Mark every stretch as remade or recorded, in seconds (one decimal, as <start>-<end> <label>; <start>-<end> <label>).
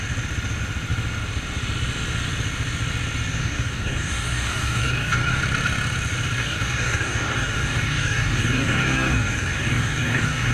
0.0-3.4 recorded; 3.4-5.4 remade; 5.4-6.4 recorded; 6.4-10.5 remade